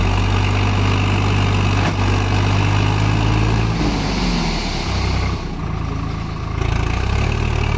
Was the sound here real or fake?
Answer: real